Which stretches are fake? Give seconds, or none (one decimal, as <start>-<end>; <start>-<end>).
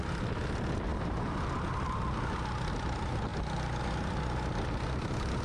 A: none